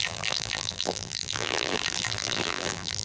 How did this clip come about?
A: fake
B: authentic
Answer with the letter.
A